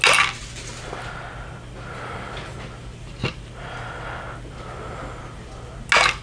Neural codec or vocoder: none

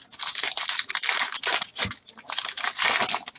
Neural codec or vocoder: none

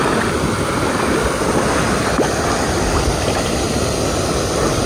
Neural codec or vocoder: none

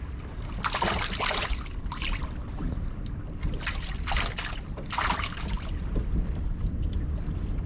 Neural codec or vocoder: none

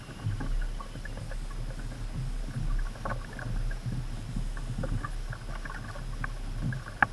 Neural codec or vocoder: none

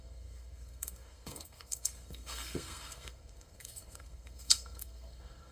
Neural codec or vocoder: codec, SNAC